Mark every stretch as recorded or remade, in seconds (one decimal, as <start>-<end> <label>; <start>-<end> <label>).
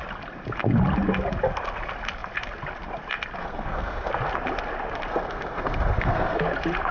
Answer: 0.0-3.4 recorded; 3.4-4.1 remade; 4.1-5.1 recorded; 5.1-6.4 remade; 6.4-6.9 recorded